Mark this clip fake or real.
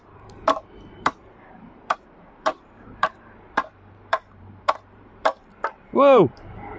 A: fake